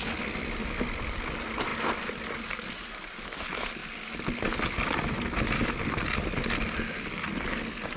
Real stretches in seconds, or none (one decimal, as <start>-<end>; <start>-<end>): 0.0-8.0